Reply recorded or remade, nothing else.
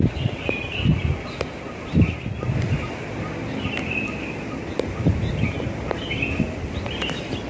remade